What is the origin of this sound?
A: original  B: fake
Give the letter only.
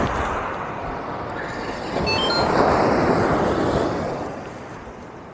B